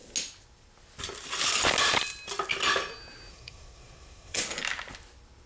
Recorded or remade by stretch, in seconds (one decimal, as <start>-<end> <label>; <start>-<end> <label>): 0.0-3.3 recorded; 3.3-4.4 remade; 4.4-5.5 recorded